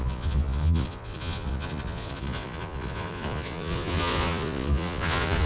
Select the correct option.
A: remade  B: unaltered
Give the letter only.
A